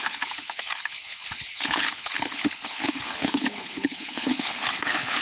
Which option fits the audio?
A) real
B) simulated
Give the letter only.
B